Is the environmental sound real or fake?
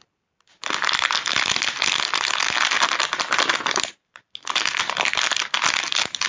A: real